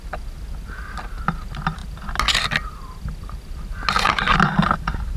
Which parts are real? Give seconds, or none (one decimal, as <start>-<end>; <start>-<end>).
0.0-5.2